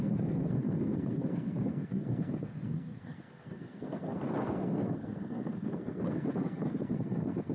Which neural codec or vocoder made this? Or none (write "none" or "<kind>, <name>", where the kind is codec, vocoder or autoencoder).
codec, SNAC